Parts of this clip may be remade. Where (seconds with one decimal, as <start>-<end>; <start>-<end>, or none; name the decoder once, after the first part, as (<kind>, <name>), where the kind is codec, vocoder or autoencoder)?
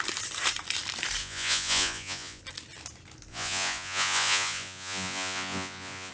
1.2-2.4 (vocoder, Vocos); 3.3-6.1